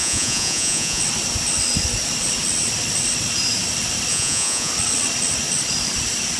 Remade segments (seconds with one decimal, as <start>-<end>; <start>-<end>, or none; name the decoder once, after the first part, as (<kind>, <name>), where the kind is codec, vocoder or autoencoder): 0.0-1.0 (vocoder, Vocos); 4.1-4.7